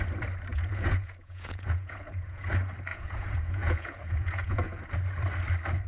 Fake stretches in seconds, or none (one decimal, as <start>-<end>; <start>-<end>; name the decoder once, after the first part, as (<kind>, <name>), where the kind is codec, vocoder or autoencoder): 0.5-2.5 (vocoder, Vocos); 2.9-4.8